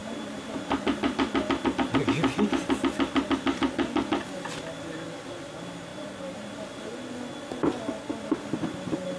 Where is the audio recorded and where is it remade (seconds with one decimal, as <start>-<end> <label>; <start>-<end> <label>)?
0.0-0.6 remade; 0.6-5.9 recorded; 5.9-6.5 remade; 6.5-9.2 recorded